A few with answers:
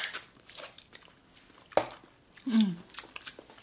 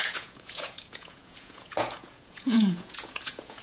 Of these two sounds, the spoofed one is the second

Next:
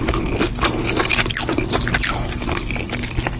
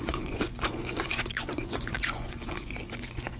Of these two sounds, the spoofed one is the second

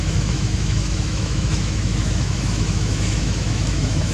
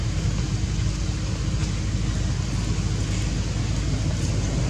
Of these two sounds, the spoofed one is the first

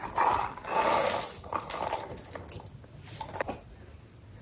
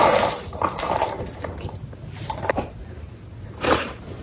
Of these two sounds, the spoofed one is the second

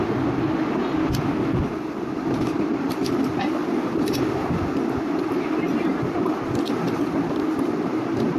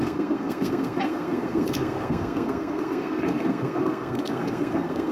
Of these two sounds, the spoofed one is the second